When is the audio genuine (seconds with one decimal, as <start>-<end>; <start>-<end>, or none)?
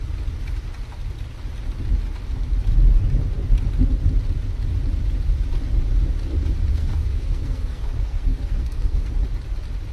0.0-6.7; 9.1-9.9